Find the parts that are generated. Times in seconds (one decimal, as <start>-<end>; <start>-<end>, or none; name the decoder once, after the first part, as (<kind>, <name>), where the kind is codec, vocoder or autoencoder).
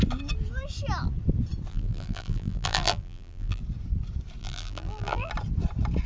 1.7-3.6 (vocoder, BigVGAN v2); 4.4-5.3